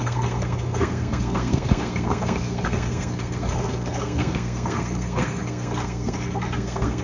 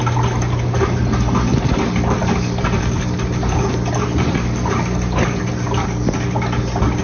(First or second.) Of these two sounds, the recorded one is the second